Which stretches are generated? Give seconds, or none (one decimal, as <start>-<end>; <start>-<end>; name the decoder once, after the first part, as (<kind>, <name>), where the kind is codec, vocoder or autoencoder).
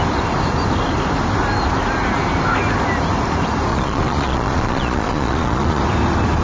3.7-5.8 (vocoder, Vocos)